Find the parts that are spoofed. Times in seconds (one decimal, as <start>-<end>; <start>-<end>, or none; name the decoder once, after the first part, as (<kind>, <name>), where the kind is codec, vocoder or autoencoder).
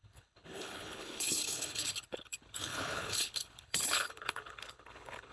0.0-5.3 (codec, HILCodec)